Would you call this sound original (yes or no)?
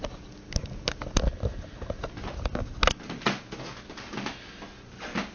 yes